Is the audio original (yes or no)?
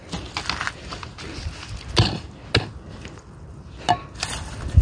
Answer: yes